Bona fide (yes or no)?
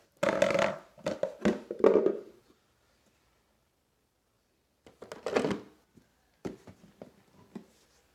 yes